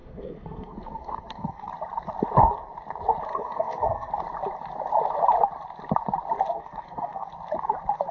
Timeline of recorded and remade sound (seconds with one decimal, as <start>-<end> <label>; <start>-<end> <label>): 0.0-1.7 remade; 1.7-3.3 recorded; 3.3-4.1 remade; 4.1-6.5 recorded; 6.5-7.3 remade; 7.3-8.1 recorded

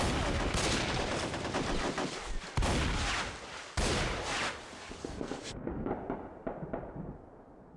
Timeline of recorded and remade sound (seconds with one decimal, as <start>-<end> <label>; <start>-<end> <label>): 0.0-5.0 recorded; 5.0-5.9 remade; 5.9-7.8 recorded

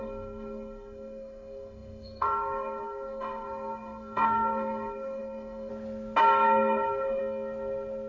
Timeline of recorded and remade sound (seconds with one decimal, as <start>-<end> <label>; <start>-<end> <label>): 0.0-5.7 remade; 5.7-6.2 recorded; 6.2-7.2 remade; 7.2-8.1 recorded

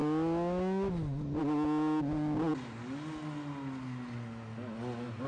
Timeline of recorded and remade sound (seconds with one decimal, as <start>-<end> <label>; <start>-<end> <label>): 0.0-5.3 recorded

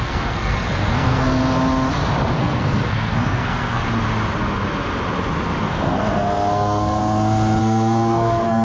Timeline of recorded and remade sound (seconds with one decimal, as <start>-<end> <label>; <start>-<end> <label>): 0.0-1.4 remade; 1.4-2.4 recorded; 2.4-3.8 remade; 3.8-5.6 recorded; 5.6-7.0 remade; 7.0-7.6 recorded; 7.6-8.6 remade

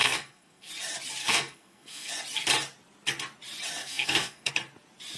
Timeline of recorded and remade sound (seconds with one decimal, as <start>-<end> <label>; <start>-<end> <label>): 0.0-0.7 remade; 0.7-1.2 recorded; 1.2-2.1 remade; 2.1-3.8 recorded; 3.8-4.5 remade; 4.5-5.2 recorded

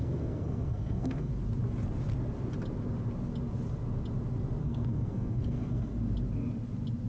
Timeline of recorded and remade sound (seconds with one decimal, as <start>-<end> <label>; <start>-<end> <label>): 0.0-1.3 remade; 1.3-4.6 recorded; 4.6-5.9 remade; 5.9-7.1 recorded

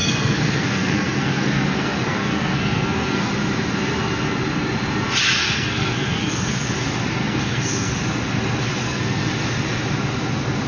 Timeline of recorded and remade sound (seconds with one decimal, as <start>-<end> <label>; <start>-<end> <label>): 0.0-3.3 remade; 3.3-5.4 recorded; 5.4-6.7 remade; 6.7-7.2 recorded; 7.2-8.0 remade; 8.0-8.8 recorded; 8.8-9.3 remade; 9.3-10.7 recorded